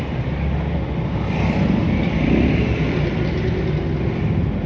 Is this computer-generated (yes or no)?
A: no